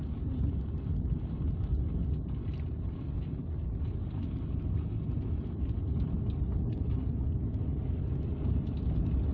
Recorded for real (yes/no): yes